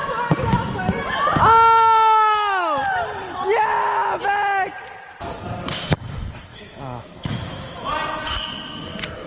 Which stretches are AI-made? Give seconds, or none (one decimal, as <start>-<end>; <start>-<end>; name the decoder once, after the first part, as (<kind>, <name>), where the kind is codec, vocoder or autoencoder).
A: 6.5-7.9 (autoencoder, DAC-VAE)